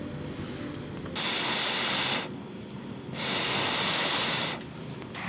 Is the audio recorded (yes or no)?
yes